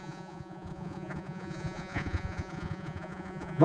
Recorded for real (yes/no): no